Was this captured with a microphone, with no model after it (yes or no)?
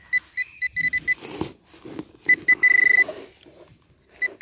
yes